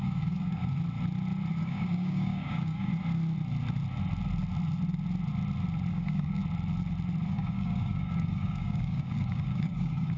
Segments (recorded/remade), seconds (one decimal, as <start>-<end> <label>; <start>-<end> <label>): 0.0-0.6 remade; 0.6-1.6 recorded; 1.6-2.9 remade; 2.9-5.9 recorded; 5.9-6.4 remade; 6.4-7.3 recorded; 7.3-10.2 remade